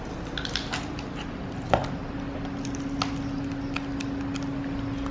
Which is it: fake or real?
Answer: real